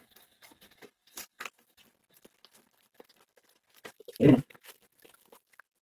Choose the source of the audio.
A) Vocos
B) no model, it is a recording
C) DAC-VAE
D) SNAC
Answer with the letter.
B